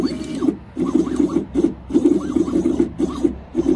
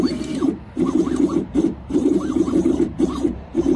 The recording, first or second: first